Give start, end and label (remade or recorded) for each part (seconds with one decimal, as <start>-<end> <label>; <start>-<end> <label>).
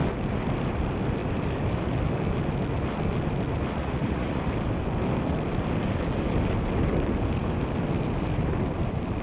0.0-3.8 recorded; 3.8-4.4 remade; 4.4-9.2 recorded